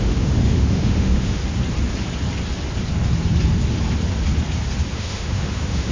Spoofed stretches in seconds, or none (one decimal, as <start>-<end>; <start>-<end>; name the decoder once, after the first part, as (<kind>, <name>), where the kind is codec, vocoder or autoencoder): 0.0-1.4 (autoencoder, DAC-VAE); 4.9-5.9